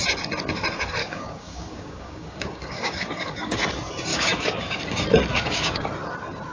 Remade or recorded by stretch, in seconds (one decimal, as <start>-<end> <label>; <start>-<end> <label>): 0.0-1.0 recorded; 1.0-3.6 remade; 3.6-4.1 recorded; 4.1-4.8 remade; 4.8-5.3 recorded; 5.3-5.9 remade; 5.9-6.5 recorded